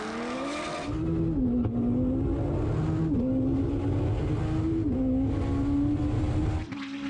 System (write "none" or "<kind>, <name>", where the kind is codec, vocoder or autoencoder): none